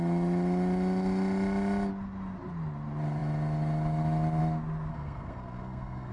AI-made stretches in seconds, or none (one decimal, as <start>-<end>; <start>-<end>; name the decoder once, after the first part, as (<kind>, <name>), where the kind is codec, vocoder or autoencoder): 4.9-6.1 (codec, SNAC)